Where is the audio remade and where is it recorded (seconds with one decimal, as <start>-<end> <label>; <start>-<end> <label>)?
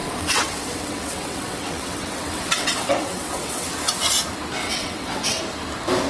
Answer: 0.0-3.7 remade; 3.7-4.6 recorded; 4.6-5.4 remade; 5.4-6.1 recorded